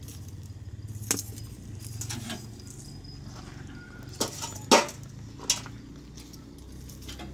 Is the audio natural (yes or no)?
yes